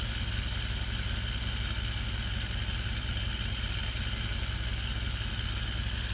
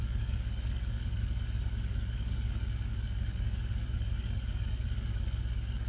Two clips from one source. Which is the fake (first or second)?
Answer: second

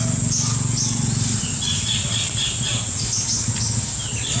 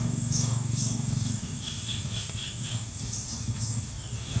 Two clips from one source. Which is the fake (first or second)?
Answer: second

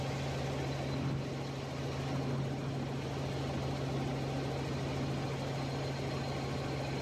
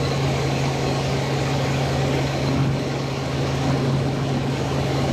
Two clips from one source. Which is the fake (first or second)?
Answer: second